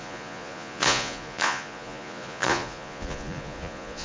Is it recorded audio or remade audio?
remade